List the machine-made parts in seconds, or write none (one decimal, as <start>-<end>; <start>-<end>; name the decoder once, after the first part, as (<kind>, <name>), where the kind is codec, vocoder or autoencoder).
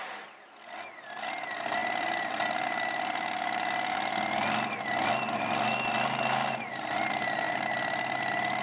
none